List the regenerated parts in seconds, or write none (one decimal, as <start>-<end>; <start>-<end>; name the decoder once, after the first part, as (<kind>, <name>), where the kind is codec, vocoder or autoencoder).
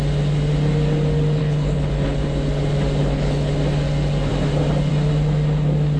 1.4-1.9 (codec, HILCodec); 3.0-3.5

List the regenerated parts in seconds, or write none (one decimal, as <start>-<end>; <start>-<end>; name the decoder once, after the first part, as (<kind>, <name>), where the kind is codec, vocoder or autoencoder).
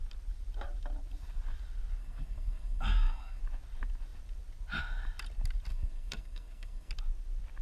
2.0-3.4 (codec, SNAC); 5.7-6.9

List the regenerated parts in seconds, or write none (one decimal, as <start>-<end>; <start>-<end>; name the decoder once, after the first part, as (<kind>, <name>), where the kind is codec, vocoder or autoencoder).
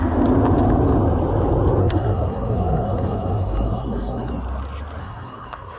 1.8-4.3 (codec, SNAC); 5.0-5.8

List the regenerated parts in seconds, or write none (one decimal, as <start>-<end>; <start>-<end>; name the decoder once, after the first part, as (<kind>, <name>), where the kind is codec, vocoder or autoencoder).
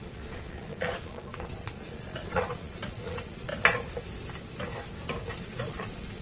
0.0-3.5 (vocoder, Vocos); 5.3-6.2